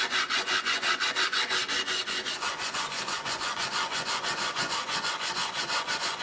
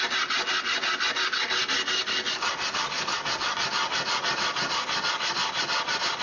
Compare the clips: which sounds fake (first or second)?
first